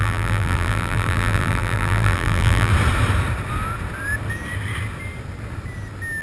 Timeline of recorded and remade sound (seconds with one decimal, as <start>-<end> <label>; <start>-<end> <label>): 0.0-2.7 remade; 2.7-6.2 recorded